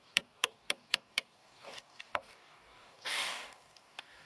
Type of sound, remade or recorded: remade